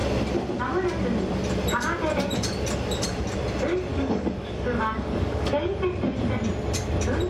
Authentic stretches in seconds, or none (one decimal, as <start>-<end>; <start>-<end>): 0.0-3.9; 5.7-7.3

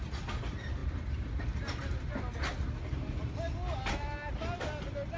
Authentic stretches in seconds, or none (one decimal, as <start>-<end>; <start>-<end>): 0.0-5.2

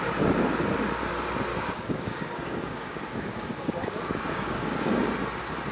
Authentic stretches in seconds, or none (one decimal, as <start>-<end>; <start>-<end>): 0.0-1.5; 4.9-5.7

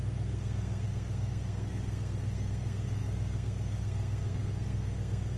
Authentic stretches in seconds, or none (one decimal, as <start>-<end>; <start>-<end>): none

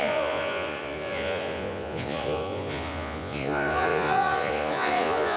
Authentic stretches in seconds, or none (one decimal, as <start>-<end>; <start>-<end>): none

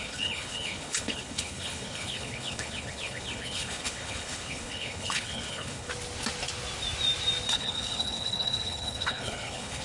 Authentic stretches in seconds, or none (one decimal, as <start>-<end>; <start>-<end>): 5.9-7.5